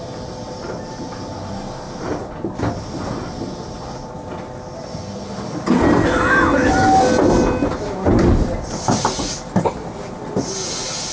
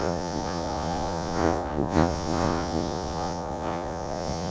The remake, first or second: second